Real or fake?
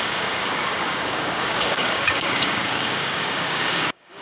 fake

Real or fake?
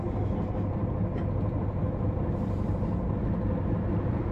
real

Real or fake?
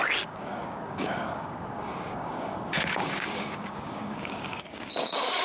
fake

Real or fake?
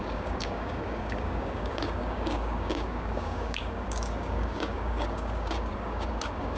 fake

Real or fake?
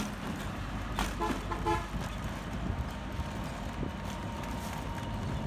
real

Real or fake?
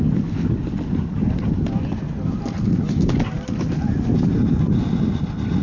real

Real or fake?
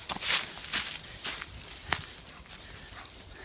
real